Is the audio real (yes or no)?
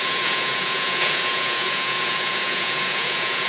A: no